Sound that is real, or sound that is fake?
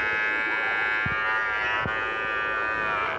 real